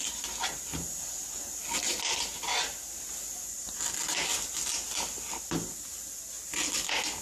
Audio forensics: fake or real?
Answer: real